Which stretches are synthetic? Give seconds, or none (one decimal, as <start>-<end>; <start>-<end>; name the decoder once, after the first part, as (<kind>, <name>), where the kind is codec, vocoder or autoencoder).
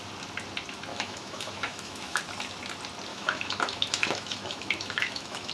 0.9-2.2 (autoencoder, DAC-VAE); 3.1-5.5